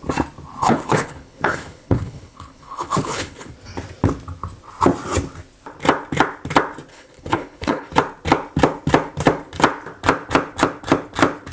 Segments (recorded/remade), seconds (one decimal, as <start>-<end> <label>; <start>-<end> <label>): 0.0-0.6 recorded; 0.6-3.5 remade; 3.5-6.9 recorded; 6.9-7.9 remade; 7.9-11.5 recorded